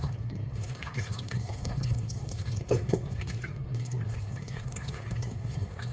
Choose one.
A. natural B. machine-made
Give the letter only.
B